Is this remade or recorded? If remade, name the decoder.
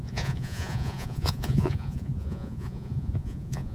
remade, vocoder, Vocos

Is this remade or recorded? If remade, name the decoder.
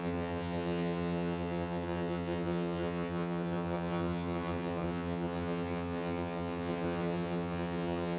remade, vocoder, HiFi-GAN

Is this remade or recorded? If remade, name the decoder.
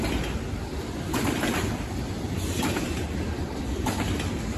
remade, vocoder, BigVGAN v2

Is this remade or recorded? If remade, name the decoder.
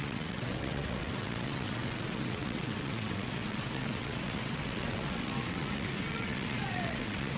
remade, vocoder, WaveNeXt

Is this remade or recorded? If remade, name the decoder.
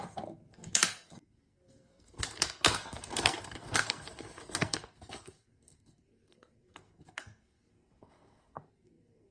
remade, codec, SNAC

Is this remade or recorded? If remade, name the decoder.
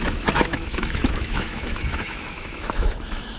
remade, autoencoder, DAC-VAE